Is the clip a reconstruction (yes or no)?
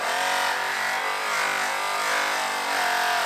no